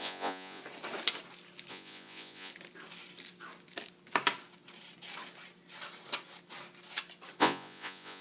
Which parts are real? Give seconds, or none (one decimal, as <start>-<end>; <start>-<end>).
0.6-1.7; 2.5-7.4

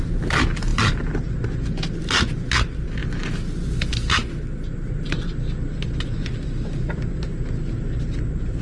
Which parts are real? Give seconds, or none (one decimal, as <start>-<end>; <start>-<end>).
0.0-8.6

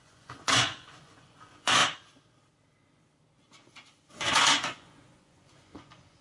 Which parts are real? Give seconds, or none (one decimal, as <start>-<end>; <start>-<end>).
1.8-4.1

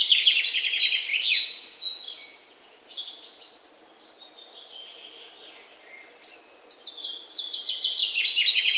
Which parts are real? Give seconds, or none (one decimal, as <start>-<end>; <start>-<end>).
0.0-1.1; 3.4-8.0